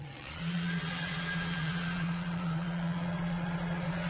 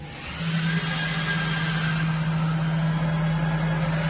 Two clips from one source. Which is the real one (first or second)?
second